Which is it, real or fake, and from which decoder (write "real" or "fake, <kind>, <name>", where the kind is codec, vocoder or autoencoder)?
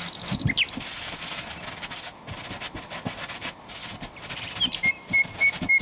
real